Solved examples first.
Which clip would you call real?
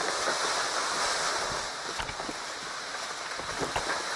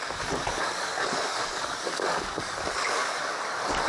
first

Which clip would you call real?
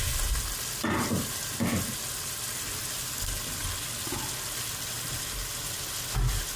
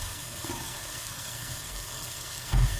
first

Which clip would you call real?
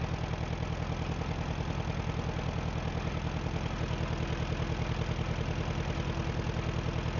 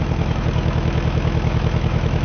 first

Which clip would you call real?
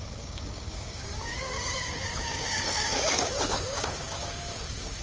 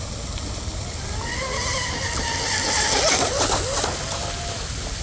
second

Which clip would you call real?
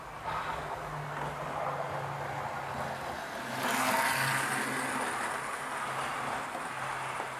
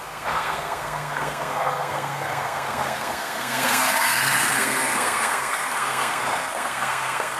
first